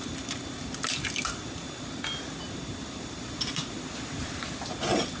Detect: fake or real real